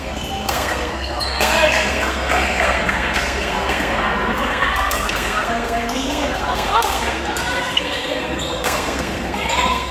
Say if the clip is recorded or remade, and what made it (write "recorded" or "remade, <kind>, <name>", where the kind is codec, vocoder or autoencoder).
remade, codec, SNAC